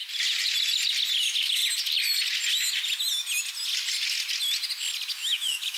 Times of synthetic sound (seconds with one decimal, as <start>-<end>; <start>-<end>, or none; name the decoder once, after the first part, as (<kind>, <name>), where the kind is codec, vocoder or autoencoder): 1.2-1.6 (autoencoder, DAC-VAE); 5.1-5.8